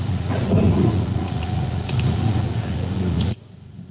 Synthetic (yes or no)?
yes